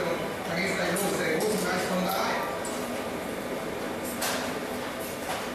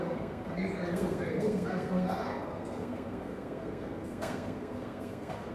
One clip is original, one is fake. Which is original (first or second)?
first